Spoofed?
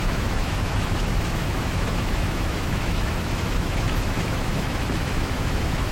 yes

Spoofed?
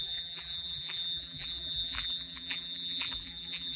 yes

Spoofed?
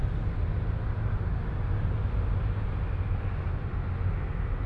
no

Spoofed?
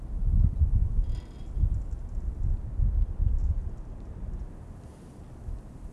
no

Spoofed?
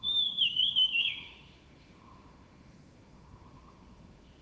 yes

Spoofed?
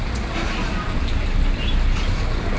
no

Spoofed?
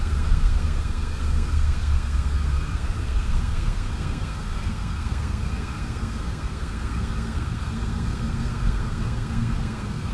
yes